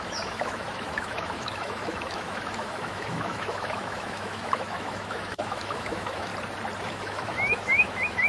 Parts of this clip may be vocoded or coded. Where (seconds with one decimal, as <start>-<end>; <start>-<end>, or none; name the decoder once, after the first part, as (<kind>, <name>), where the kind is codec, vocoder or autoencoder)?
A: 0.0-6.3 (autoencoder, DAC-VAE); 6.8-8.3